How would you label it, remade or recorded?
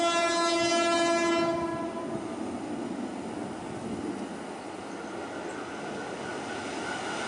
recorded